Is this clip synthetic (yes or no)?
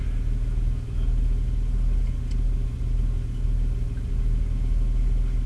no